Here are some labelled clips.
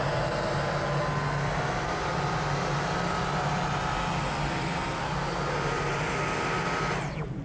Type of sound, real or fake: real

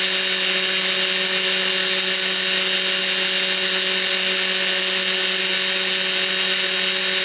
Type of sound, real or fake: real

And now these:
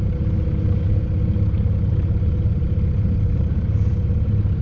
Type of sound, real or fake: real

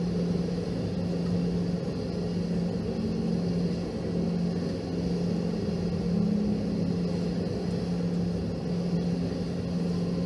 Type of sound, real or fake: real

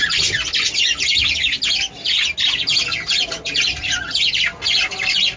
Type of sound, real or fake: real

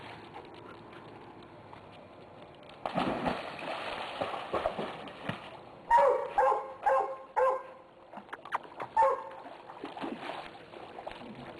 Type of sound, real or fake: real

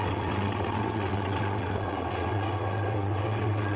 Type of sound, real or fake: fake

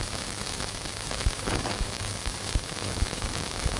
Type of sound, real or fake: fake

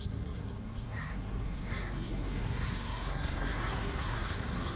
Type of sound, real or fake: fake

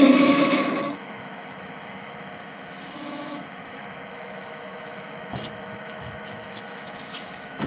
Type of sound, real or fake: fake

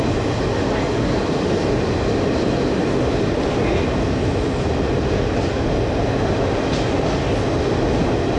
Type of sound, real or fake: real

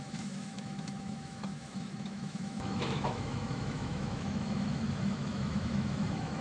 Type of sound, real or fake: fake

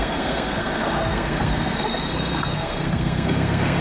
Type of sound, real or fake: fake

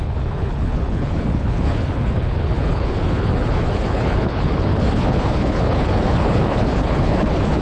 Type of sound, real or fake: fake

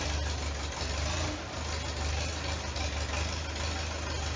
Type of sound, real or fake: real